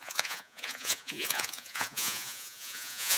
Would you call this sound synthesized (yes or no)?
yes